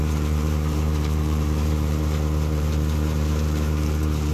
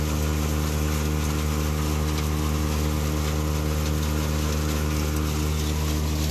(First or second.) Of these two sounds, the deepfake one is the first